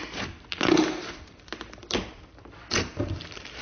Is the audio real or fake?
real